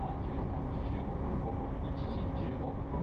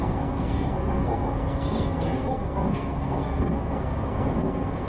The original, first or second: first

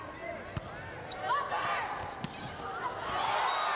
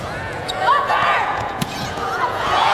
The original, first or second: first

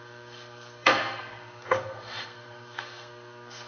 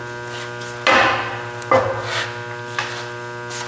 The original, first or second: second